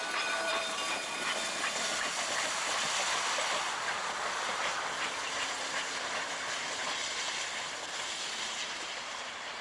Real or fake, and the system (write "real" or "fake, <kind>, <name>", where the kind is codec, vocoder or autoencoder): fake, vocoder, BigVGAN v2